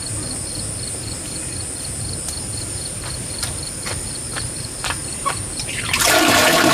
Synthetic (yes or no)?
yes